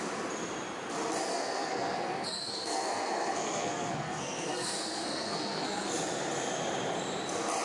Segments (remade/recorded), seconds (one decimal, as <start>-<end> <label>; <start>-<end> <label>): 0.0-1.3 recorded; 1.3-5.9 remade; 5.9-7.6 recorded